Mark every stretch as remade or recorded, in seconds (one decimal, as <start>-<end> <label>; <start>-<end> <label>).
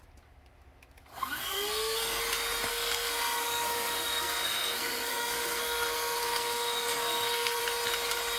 0.0-1.1 recorded; 1.1-2.2 remade; 2.2-2.7 recorded; 2.7-7.6 remade; 7.6-8.4 recorded